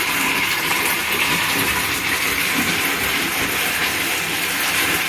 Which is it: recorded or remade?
remade